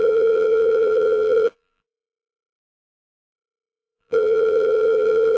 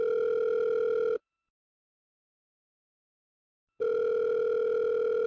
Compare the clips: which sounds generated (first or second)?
first